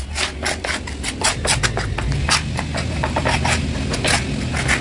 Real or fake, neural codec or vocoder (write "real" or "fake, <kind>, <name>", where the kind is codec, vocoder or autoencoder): real